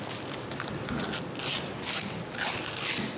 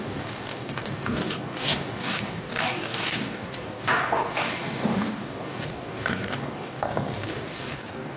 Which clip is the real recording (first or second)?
first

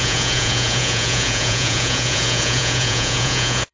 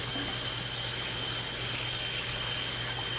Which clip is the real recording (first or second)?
second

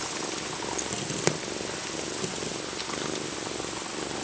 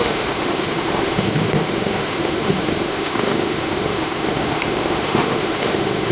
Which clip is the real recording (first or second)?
first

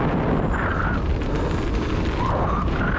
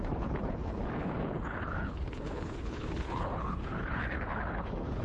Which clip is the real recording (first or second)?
first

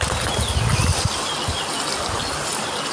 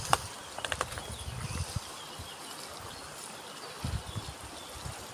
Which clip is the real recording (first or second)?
first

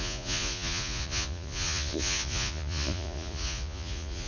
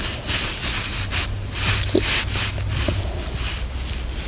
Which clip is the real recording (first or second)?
second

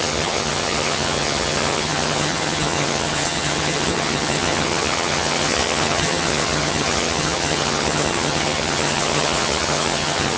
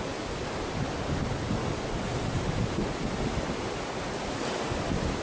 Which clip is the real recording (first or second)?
second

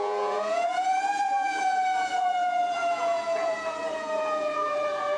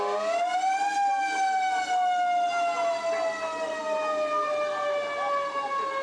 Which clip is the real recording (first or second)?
second